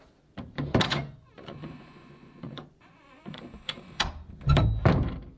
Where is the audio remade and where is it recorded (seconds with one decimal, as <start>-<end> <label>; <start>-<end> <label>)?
0.0-0.9 recorded; 0.9-4.1 remade; 4.1-5.4 recorded